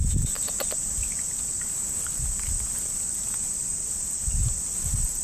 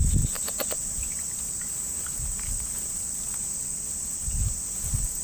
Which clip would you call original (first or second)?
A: second